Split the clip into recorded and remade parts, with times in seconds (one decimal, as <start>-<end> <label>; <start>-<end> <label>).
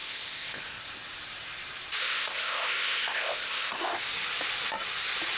0.0-0.8 remade; 0.8-2.0 recorded; 2.0-4.0 remade; 4.0-5.4 recorded